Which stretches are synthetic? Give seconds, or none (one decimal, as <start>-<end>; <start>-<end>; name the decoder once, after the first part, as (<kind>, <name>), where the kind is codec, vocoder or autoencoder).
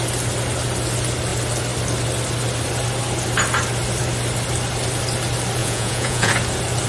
5.6-6.3 (vocoder, Vocos)